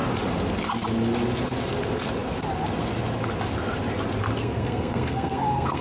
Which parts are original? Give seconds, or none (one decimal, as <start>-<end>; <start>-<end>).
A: 0.0-4.4